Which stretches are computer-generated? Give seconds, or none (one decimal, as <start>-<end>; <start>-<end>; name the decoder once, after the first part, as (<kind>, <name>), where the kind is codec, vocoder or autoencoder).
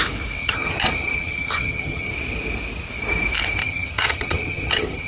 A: 0.4-2.1 (vocoder, HiFi-GAN); 3.6-5.1